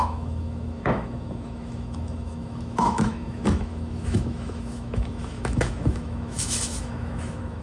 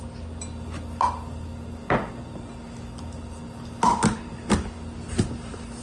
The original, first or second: second